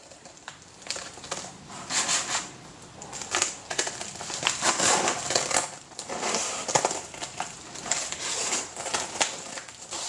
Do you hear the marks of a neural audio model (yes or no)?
yes